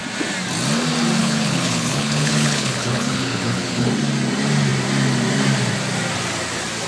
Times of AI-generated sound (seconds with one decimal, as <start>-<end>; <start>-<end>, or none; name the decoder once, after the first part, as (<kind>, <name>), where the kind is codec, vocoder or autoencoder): 1.2-3.9 (codec, HILCodec)